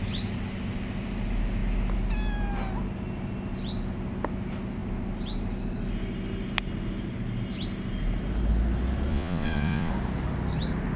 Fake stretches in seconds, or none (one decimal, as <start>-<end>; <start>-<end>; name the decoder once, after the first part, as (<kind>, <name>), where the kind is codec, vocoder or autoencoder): 9.1-9.9 (vocoder, Vocos)